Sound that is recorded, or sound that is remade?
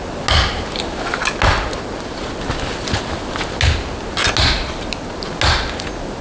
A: recorded